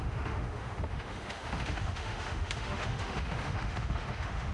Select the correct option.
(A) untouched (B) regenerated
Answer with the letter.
B